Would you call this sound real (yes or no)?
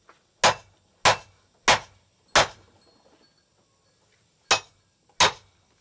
yes